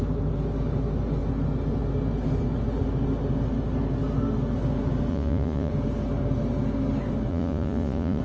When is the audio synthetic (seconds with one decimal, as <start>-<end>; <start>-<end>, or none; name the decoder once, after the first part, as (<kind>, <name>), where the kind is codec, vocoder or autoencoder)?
5.1-5.7 (vocoder, Vocos); 7.3-8.2